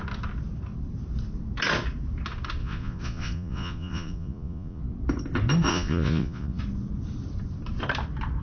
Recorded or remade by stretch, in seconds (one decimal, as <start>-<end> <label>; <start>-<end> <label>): 0.0-2.6 recorded; 2.6-4.8 remade; 4.8-5.7 recorded; 5.7-6.6 remade; 6.6-8.4 recorded

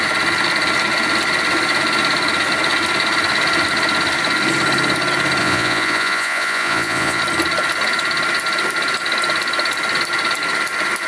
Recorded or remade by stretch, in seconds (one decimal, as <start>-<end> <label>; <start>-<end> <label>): 0.0-5.4 recorded; 5.4-7.2 remade; 7.2-11.1 recorded

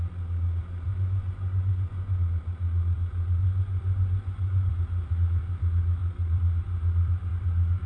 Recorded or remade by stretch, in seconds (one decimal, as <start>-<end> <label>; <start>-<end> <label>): 0.0-0.9 recorded; 0.9-2.2 remade; 2.2-3.4 recorded; 3.4-4.7 remade; 4.7-7.9 recorded

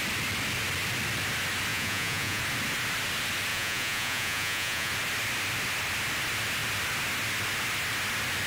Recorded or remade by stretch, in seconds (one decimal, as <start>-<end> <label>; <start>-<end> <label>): 0.0-1.7 recorded; 1.7-2.4 remade; 2.4-3.5 recorded; 3.5-4.9 remade; 4.9-8.5 recorded